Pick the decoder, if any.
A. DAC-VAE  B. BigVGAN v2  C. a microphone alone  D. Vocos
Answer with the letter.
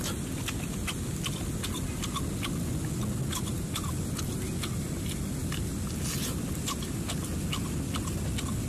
C